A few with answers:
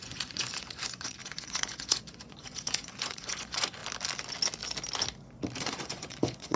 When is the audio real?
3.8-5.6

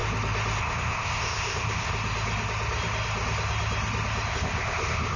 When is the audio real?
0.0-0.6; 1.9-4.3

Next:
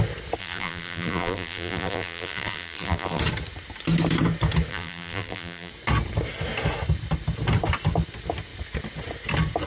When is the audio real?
0.0-0.4; 3.2-4.7; 5.7-9.7